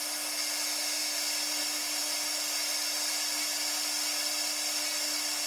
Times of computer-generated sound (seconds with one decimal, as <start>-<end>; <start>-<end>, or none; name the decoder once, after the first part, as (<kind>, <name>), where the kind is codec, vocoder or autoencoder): none